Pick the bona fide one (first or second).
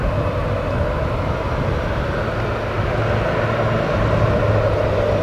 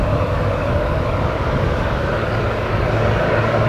first